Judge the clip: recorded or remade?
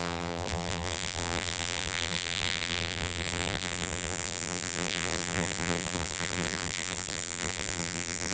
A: remade